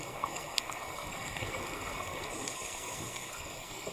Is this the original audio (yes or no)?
no